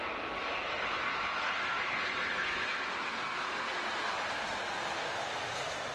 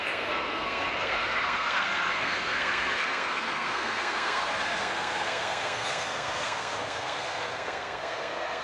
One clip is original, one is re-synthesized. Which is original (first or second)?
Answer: first